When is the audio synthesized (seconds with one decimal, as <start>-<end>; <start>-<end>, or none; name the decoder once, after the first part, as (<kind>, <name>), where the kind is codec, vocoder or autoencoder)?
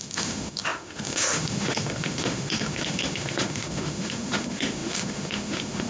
0.0-5.9 (autoencoder, DAC-VAE)